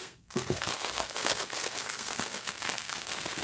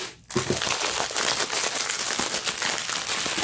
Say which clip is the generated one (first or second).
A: first